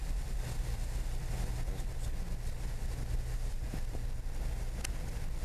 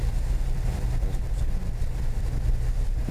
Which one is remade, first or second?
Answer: second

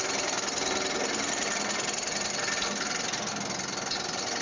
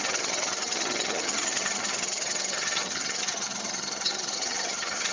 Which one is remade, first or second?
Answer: second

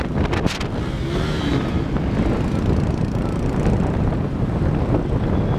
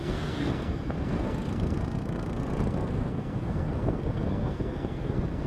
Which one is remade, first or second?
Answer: second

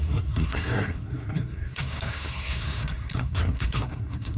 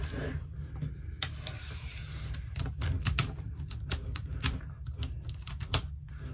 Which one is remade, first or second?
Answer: first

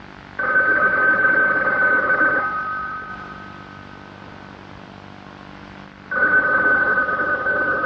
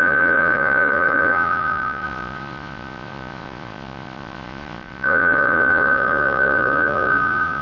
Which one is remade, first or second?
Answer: second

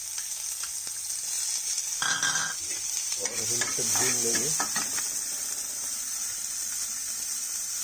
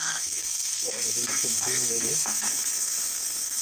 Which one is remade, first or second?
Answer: second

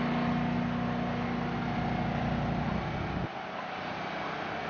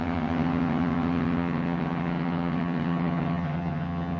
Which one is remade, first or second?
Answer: second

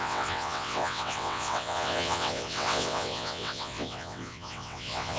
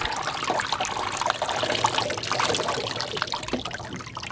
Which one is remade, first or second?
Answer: first